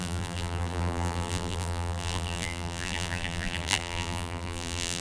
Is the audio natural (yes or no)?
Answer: no